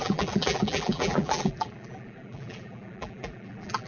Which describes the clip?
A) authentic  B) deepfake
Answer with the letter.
B